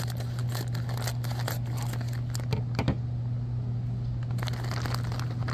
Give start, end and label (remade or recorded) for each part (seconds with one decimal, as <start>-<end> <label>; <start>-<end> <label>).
0.0-5.5 recorded